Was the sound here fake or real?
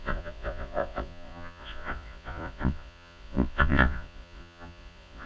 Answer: fake